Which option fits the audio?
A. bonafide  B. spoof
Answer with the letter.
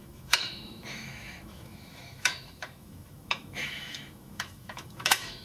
B